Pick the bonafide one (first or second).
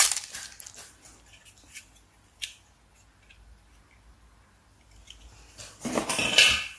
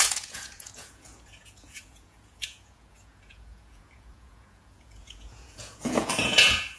first